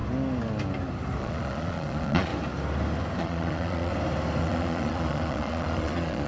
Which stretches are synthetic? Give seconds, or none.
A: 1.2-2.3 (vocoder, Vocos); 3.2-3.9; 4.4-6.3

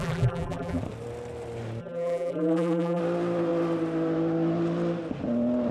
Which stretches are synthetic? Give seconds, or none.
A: 0.0-0.8 (vocoder, BigVGAN v2); 1.8-3.0